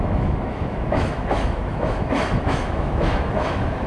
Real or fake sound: fake